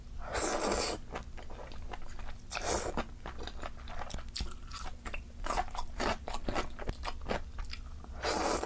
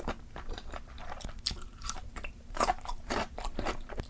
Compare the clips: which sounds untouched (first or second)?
first